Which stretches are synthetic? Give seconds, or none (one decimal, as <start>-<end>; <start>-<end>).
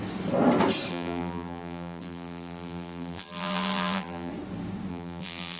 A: 0.9-4.3; 4.9-5.6